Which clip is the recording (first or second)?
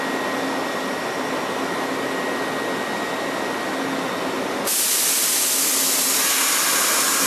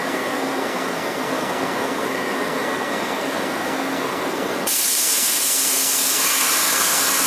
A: first